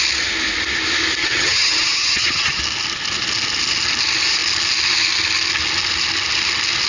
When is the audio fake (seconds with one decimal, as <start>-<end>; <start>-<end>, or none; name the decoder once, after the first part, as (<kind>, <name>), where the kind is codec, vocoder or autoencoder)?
1.2-2.6 (vocoder, HiFi-GAN)